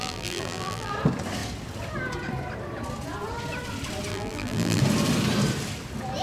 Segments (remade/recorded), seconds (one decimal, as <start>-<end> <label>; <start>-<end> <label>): 0.0-0.9 remade; 0.9-4.1 recorded; 4.1-4.8 remade; 4.8-6.2 recorded